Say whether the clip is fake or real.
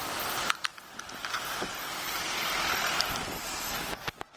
real